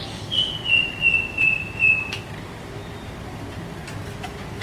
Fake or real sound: real